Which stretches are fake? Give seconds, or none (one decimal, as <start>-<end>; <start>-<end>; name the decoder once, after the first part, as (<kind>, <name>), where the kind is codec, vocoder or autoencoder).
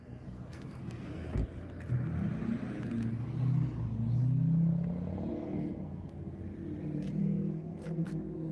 0.0-1.4 (codec, SNAC); 5.3-6.4; 7.2-8.5